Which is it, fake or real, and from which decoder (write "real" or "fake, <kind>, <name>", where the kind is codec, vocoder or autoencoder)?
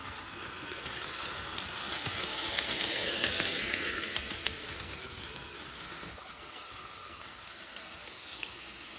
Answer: fake, codec, SNAC